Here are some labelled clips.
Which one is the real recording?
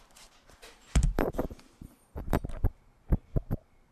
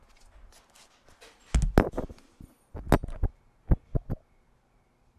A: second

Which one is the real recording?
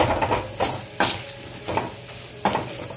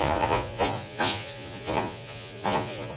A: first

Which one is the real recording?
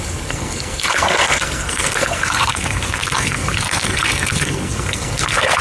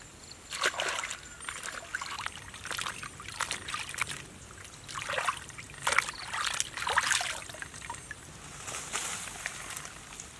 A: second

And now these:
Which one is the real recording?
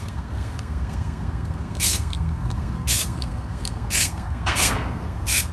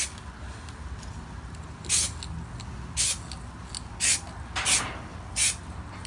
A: second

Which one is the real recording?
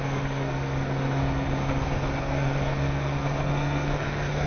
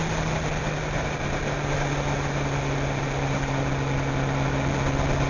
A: second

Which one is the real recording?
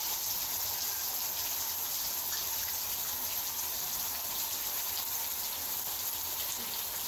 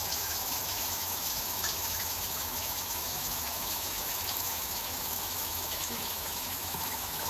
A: first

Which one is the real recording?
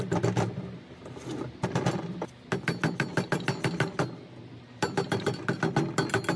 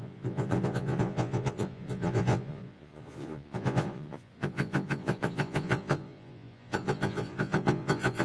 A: first